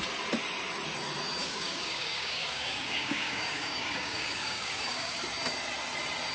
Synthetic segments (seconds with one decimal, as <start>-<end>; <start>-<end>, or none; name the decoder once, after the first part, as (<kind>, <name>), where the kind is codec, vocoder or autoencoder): 1.4-5.2 (codec, DAC)